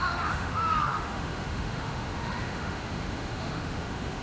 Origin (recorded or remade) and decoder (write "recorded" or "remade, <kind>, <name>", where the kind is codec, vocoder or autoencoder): remade, autoencoder, DAC-VAE